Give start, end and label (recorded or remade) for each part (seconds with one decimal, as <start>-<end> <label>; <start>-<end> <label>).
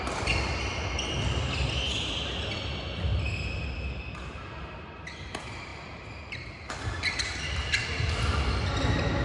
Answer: 0.0-9.2 recorded